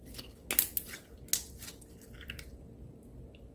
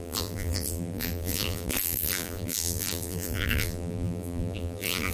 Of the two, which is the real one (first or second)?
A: first